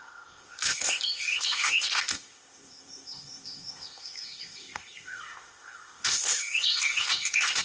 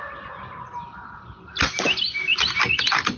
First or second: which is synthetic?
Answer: first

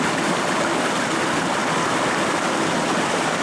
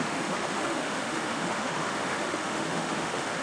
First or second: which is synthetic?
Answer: second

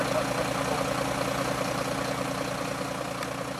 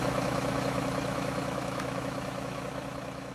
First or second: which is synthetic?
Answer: second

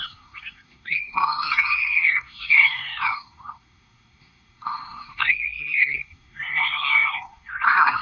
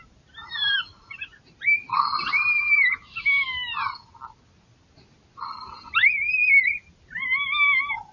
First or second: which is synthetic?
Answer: first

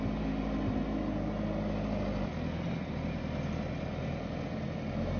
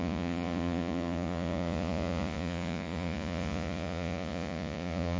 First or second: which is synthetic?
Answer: second